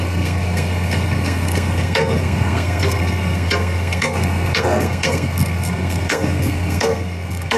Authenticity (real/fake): fake